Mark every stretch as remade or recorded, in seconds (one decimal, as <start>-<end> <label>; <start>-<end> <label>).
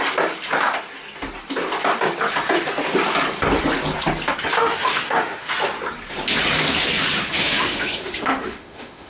0.0-4.6 recorded; 4.6-5.5 remade; 5.5-7.4 recorded; 7.4-9.1 remade